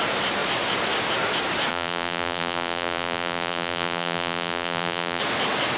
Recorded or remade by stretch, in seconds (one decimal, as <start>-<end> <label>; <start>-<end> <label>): 0.0-1.7 recorded; 1.7-5.2 remade; 5.2-5.8 recorded